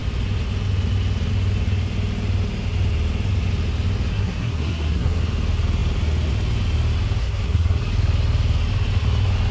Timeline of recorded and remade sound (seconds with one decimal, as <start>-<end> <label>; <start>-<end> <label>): 0.0-4.1 recorded; 4.1-5.2 remade; 5.2-7.2 recorded; 7.2-7.8 remade; 7.8-9.5 recorded